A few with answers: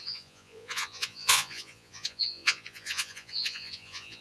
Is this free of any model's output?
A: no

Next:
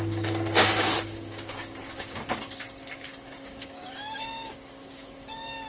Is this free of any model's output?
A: no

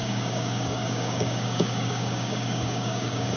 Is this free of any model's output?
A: no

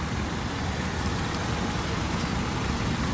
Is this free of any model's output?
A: yes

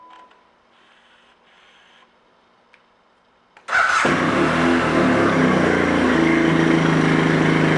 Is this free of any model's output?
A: yes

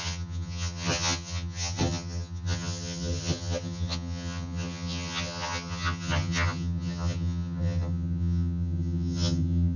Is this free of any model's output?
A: no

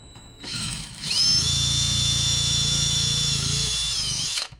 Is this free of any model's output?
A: no